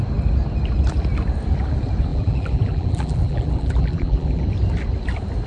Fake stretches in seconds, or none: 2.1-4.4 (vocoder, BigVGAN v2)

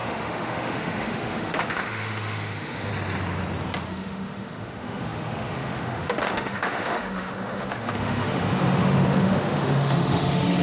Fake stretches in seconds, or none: 0.0-2.9 (autoencoder, DAC-VAE); 3.9-10.6